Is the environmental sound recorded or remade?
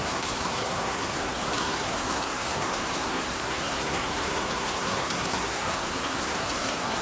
remade